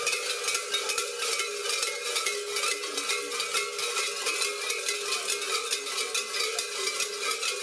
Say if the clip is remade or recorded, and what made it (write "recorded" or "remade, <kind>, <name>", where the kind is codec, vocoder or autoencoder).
recorded